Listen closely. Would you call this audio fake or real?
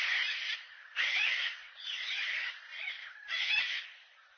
fake